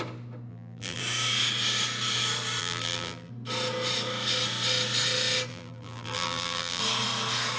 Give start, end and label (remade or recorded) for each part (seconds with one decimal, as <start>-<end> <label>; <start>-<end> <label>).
0.0-0.5 recorded; 0.5-1.0 remade; 1.0-2.6 recorded; 2.6-3.3 remade; 3.3-5.5 recorded; 5.5-6.8 remade; 6.8-7.6 recorded